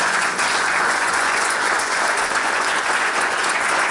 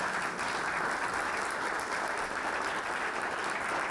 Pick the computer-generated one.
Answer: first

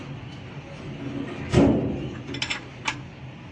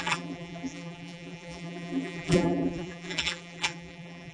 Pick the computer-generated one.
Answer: second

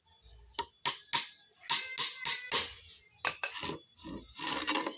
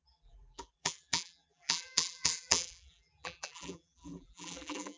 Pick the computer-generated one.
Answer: second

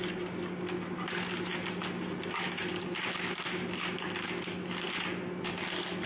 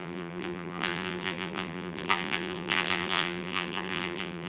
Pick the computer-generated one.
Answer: second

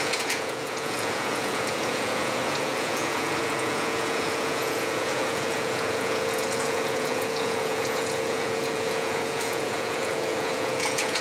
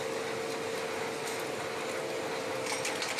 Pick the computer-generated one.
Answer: first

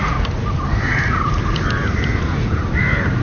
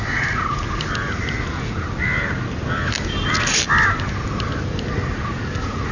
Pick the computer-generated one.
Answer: first